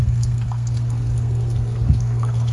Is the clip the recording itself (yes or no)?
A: no